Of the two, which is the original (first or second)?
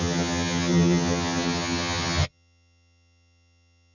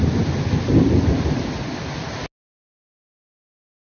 second